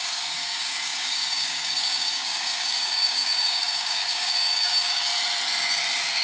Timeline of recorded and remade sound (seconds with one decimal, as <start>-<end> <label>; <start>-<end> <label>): 0.0-5.1 remade; 5.1-6.2 recorded